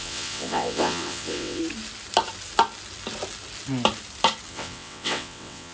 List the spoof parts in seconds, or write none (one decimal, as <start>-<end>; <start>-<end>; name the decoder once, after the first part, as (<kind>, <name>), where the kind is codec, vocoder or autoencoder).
0.0-1.6 (vocoder, WaveNeXt); 4.5-5.7